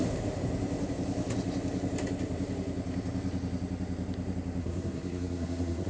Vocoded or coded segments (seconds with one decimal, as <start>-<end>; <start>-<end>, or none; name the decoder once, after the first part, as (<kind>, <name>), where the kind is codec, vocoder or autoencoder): 4.6-5.9 (codec, SNAC)